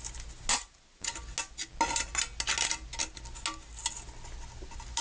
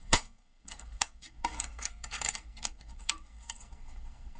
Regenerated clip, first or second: second